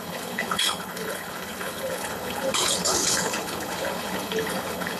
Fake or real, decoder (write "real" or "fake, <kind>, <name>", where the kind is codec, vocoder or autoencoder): fake, codec, HILCodec